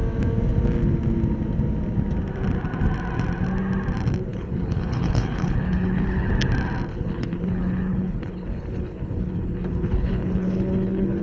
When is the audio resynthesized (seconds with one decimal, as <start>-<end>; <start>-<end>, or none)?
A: 4.3-6.3; 6.9-11.2